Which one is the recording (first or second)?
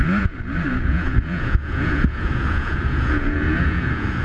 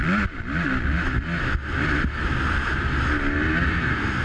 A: second